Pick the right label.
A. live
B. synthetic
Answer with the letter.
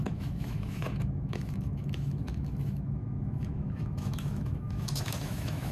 B